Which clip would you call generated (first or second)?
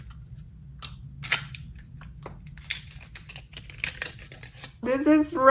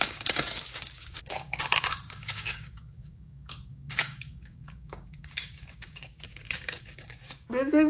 second